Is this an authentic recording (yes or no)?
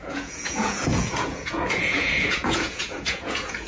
no